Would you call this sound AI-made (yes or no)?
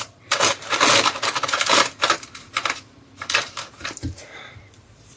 yes